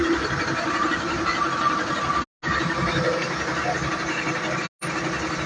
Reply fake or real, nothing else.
real